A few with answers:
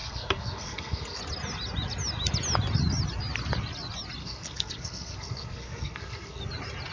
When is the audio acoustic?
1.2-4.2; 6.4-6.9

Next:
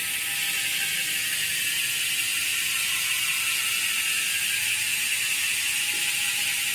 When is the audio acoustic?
0.0-6.7

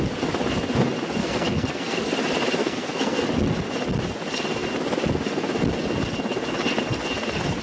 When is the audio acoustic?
0.0-1.2; 2.0-2.6; 3.2-7.6

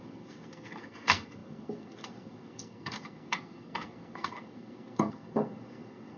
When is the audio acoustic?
none